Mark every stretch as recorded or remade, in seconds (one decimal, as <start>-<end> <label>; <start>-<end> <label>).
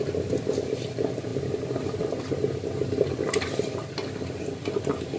0.0-5.2 recorded